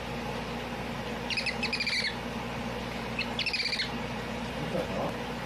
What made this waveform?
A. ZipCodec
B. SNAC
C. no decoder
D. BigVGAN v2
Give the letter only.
C